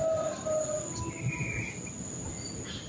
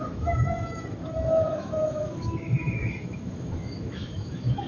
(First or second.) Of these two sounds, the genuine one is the first